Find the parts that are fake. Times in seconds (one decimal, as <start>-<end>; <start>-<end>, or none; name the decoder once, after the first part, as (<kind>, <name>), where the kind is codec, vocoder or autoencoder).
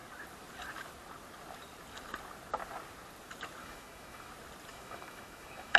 3.6-4.3 (autoencoder, DAC-VAE); 4.7-5.8